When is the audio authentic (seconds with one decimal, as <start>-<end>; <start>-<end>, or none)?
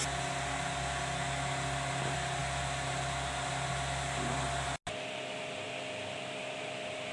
0.0-7.1